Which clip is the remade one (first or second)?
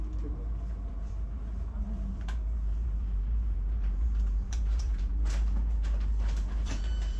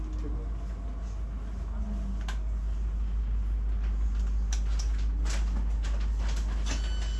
first